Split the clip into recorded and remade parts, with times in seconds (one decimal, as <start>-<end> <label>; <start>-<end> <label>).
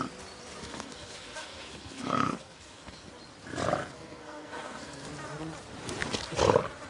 0.0-0.6 recorded; 0.6-3.1 remade; 3.1-3.8 recorded; 3.8-5.1 remade; 5.1-6.9 recorded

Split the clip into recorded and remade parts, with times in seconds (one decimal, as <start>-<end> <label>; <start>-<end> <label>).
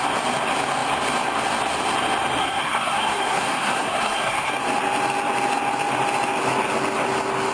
0.0-2.4 recorded; 2.4-4.5 remade; 4.5-7.5 recorded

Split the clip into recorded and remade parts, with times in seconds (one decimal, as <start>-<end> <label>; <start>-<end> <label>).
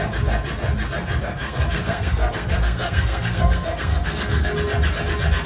0.0-1.2 recorded; 1.2-4.5 remade; 4.5-5.5 recorded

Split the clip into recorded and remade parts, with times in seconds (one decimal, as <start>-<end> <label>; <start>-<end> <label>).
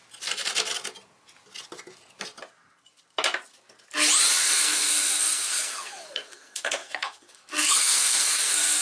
0.0-4.4 recorded; 4.4-8.8 remade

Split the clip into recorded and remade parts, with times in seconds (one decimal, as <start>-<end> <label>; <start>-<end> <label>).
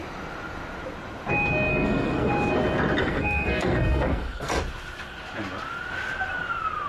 0.0-1.7 recorded; 1.7-2.3 remade; 2.3-3.0 recorded; 3.0-4.6 remade; 4.6-6.9 recorded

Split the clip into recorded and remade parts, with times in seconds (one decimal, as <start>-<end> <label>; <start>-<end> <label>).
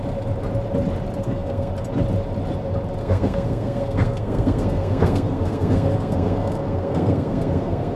0.0-1.2 recorded; 1.2-1.7 remade; 1.7-3.0 recorded; 3.0-8.0 remade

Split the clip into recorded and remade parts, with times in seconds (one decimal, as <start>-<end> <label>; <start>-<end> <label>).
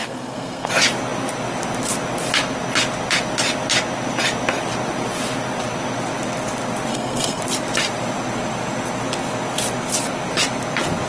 0.0-0.7 remade; 0.7-6.9 recorded; 6.9-7.4 remade; 7.4-11.1 recorded